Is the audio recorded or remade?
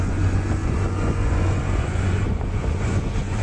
remade